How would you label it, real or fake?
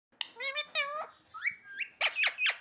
real